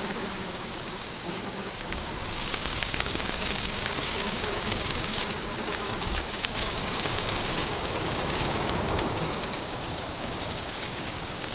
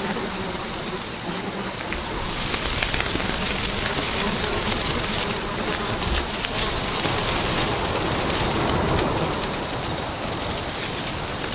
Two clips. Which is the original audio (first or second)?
second